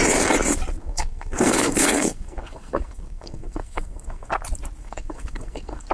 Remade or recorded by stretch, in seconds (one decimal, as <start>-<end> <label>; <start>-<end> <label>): 0.0-0.8 recorded; 0.8-4.3 remade; 4.3-4.8 recorded; 4.8-5.9 remade